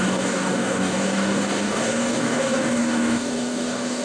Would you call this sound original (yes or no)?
no